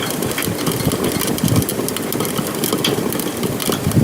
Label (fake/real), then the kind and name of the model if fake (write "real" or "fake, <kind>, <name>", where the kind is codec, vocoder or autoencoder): real